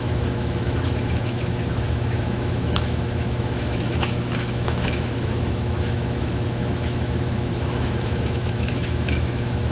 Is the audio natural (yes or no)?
no